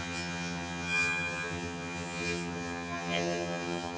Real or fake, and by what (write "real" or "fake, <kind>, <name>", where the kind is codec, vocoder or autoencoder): fake, vocoder, HiFi-GAN